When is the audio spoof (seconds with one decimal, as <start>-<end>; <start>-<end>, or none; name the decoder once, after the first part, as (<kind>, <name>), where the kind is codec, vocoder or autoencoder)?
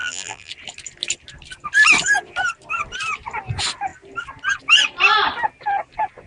0.0-0.5 (vocoder, BigVGAN v2)